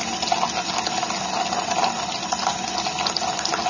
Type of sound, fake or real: real